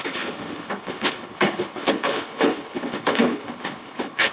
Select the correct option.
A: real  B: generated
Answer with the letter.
B